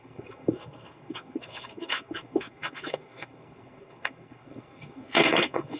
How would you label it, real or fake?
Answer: fake